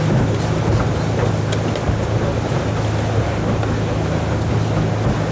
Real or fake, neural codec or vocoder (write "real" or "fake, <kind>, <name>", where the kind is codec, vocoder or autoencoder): real